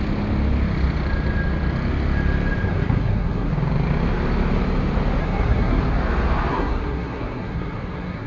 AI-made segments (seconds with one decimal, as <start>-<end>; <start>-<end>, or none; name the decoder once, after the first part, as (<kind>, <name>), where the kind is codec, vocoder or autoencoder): 2.7-3.5 (codec, SNAC); 5.2-5.8; 6.5-8.3

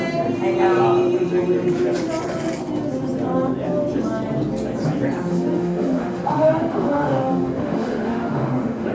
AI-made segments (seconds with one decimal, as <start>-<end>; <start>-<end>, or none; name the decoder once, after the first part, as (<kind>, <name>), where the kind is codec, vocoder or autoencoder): 5.3-8.9 (autoencoder, DAC-VAE)

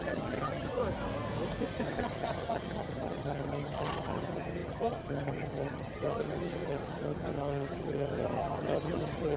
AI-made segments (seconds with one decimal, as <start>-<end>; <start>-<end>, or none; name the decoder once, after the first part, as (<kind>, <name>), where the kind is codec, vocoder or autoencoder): 0.0-0.8 (vocoder, HiFi-GAN); 1.8-9.4

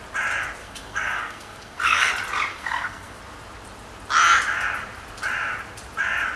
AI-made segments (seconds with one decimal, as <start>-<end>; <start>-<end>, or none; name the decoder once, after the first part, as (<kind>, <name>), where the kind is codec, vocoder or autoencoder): 0.6-2.1 (codec, SNAC); 2.5-3.2

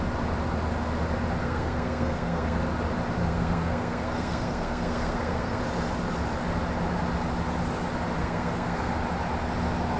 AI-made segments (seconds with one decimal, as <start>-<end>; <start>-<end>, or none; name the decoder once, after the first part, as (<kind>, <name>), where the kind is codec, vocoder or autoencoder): 1.4-2.6 (codec, SNAC); 3.2-5.6; 8.2-8.9

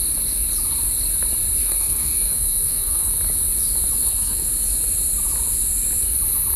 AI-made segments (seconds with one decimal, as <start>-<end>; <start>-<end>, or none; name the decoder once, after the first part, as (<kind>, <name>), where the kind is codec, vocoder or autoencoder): 1.6-3.1 (codec, SNAC); 4.0-4.5

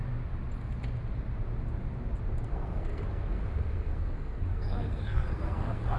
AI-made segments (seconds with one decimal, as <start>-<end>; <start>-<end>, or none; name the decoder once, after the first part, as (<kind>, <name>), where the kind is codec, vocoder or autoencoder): 2.4-6.0 (codec, SNAC)

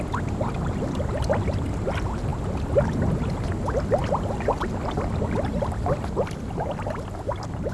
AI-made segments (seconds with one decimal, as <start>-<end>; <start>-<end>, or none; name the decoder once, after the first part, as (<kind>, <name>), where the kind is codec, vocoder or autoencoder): none